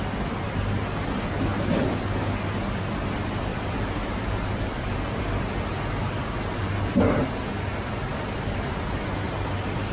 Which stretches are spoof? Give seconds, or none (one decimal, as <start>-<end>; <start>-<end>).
3.5-4.7